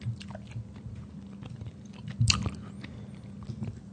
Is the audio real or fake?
real